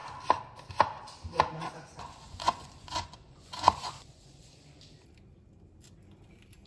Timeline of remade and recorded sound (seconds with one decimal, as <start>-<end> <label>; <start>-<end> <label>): 0.0-1.6 recorded; 1.6-4.8 remade; 4.8-6.7 recorded